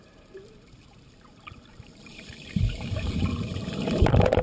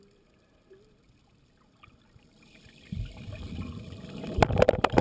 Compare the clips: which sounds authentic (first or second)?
second